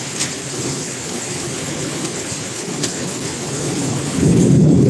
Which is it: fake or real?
fake